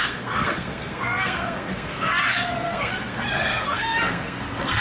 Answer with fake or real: fake